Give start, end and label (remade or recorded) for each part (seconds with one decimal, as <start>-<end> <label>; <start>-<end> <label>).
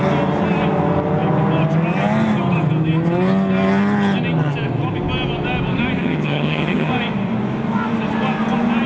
0.0-6.0 recorded; 6.0-6.9 remade; 6.9-8.9 recorded